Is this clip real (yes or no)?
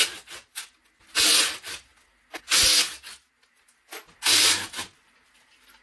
yes